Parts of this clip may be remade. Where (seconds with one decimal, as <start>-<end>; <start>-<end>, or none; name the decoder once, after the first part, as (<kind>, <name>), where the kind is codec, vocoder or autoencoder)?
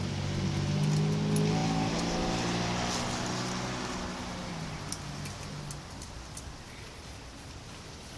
none